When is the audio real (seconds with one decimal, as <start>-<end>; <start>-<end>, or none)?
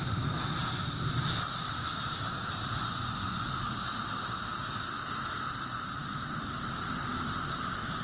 0.0-2.8; 3.5-8.0